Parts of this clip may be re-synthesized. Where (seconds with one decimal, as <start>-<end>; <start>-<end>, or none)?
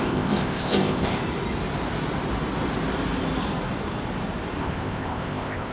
0.0-1.2; 4.6-5.7